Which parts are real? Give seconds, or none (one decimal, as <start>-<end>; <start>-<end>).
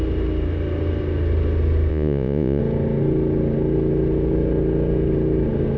0.0-1.9; 2.6-5.8